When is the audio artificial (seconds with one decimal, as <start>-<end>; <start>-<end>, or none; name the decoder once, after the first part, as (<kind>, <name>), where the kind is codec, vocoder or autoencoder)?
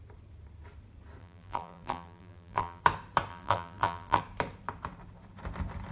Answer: 1.2-2.8 (vocoder, BigVGAN v2); 3.3-4.2